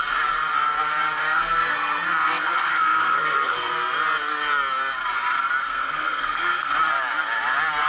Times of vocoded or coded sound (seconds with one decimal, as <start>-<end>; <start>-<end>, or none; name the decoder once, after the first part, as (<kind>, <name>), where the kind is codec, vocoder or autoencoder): 1.2-3.7 (codec, SNAC); 5.6-6.7